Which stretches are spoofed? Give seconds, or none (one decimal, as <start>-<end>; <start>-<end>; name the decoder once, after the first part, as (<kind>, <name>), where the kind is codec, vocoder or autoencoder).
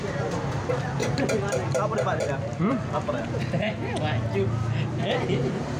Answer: none